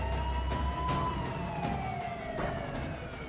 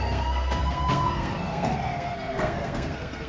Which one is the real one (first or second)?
first